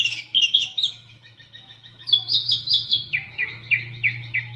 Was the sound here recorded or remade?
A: remade